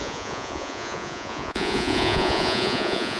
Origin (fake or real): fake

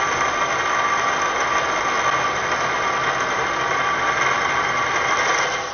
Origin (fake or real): real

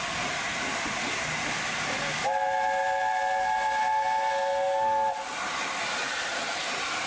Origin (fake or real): real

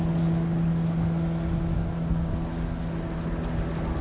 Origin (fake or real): real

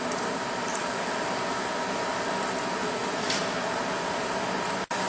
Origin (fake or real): real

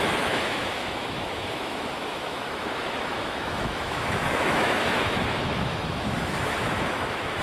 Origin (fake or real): fake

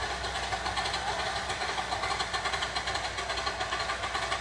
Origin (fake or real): real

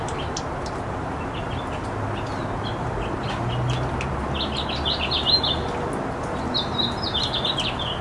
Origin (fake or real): real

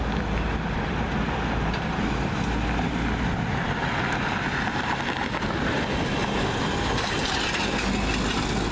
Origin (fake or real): real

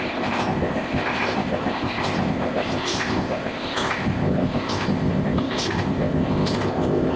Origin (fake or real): fake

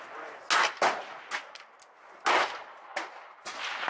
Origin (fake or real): real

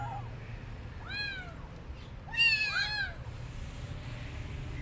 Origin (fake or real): real